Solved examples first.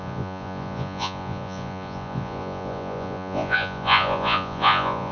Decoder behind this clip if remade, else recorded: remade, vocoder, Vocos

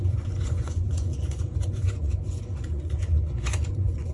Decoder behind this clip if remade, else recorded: remade, vocoder, Vocos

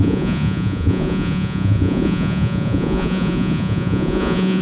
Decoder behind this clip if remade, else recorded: remade, vocoder, Vocos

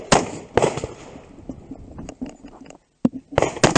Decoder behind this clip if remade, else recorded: recorded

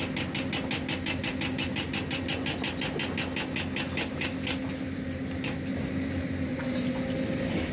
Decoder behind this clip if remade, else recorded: recorded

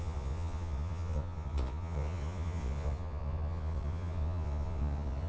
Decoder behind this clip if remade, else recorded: remade, vocoder, Vocos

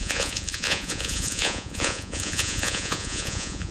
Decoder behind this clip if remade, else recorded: remade, vocoder, Vocos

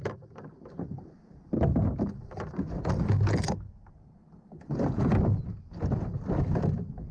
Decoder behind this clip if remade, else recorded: recorded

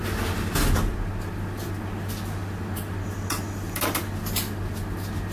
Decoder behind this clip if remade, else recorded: recorded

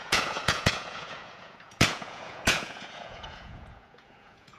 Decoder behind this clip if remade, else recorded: remade, vocoder, Vocos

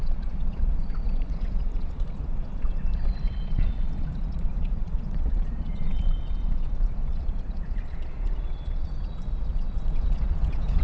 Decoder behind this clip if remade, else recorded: remade, vocoder, Vocos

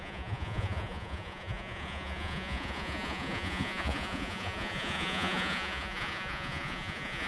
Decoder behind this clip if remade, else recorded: remade, vocoder, Vocos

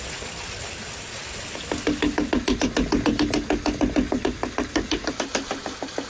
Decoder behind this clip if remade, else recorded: recorded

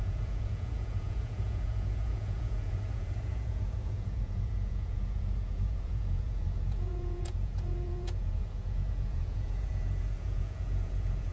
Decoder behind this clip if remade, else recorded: remade, vocoder, Vocos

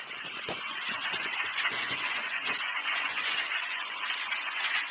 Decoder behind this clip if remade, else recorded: remade, vocoder, Vocos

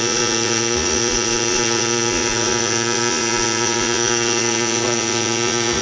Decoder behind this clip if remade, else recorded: remade, vocoder, Vocos